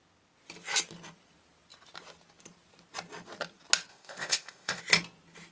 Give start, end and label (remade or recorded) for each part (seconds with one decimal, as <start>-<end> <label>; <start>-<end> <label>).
0.0-3.9 recorded; 3.9-4.8 remade; 4.8-5.5 recorded